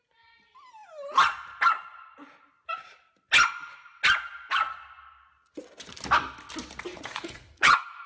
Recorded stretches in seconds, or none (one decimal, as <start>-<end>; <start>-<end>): 0.0-6.9